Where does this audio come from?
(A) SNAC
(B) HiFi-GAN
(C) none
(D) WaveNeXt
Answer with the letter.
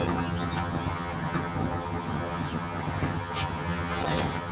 B